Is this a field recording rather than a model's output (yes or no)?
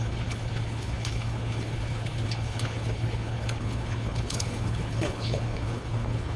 no